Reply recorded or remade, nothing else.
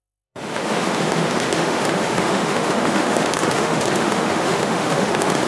remade